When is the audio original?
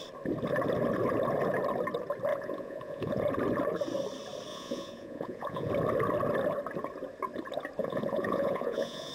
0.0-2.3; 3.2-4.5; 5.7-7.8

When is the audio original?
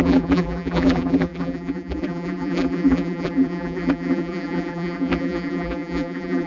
none